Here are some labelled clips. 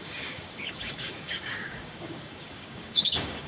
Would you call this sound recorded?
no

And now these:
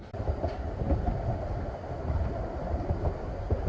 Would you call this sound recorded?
yes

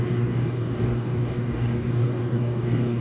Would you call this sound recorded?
no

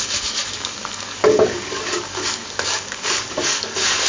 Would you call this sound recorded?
no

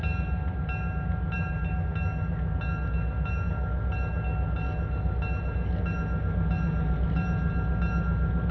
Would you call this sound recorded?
yes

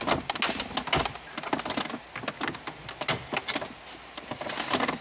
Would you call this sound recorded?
yes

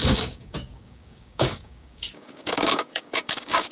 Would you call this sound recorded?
no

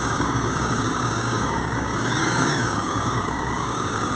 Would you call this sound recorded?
no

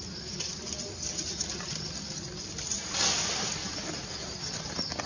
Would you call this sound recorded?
yes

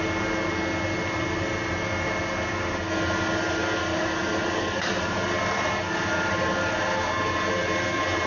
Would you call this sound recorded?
yes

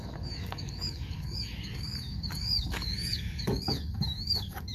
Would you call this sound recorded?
no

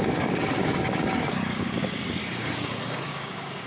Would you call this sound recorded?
no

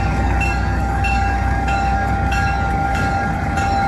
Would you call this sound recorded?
no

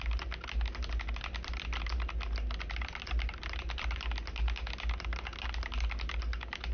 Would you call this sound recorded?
yes